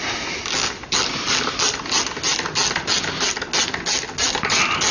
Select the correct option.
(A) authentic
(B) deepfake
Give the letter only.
A